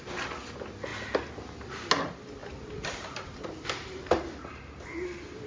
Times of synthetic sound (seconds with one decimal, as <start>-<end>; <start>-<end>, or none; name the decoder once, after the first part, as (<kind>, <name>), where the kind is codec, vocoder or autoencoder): 2.4-5.5 (vocoder, BigVGAN v2)